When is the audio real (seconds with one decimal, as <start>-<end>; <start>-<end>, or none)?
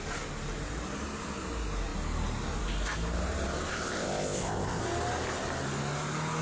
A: 0.0-3.7; 4.8-6.4